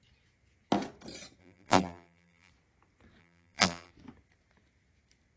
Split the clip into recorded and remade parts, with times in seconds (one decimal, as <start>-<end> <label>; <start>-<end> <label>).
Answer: 0.0-1.4 recorded; 1.4-2.5 remade; 2.5-3.2 recorded; 3.2-3.9 remade; 3.9-5.4 recorded